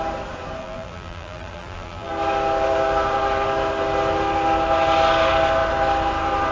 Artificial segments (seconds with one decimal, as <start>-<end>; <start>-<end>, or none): 0.6-2.1